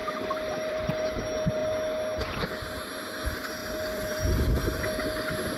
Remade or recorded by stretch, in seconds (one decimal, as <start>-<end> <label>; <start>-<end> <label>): 0.0-1.2 remade; 1.2-3.6 recorded; 3.6-4.8 remade; 4.8-5.6 recorded